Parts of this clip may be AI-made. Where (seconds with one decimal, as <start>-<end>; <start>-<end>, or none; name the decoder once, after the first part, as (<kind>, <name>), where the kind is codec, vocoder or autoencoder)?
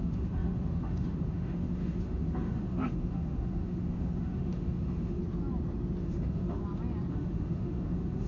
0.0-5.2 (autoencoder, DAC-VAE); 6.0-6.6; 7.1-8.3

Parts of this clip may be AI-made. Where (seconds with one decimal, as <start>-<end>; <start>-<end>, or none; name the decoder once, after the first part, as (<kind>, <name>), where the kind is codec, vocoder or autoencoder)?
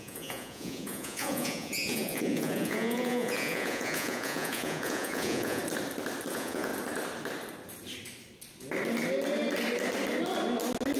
0.0-5.6 (vocoder, Vocos); 6.3-6.7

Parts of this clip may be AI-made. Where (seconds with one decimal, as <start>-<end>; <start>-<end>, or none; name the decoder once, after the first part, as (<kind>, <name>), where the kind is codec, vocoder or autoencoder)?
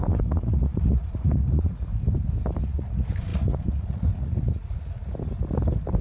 0.0-1.9 (vocoder, Vocos); 2.6-5.0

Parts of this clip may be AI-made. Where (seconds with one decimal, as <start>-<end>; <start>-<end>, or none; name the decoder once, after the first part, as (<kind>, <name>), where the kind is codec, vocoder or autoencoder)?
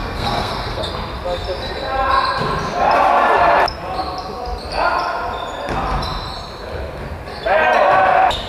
0.0-0.9 (codec, SNAC)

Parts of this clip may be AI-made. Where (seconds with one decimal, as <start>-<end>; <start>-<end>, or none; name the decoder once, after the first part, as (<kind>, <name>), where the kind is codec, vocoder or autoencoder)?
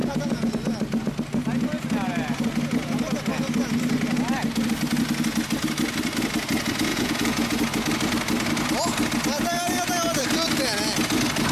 0.0-0.5 (vocoder, Vocos); 6.9-7.6